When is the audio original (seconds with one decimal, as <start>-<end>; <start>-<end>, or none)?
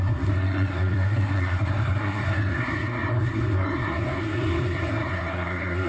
none